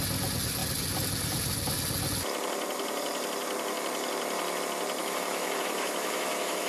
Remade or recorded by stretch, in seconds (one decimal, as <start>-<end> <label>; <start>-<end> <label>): 0.0-5.0 recorded; 5.0-6.7 remade